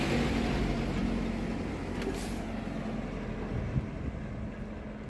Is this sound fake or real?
real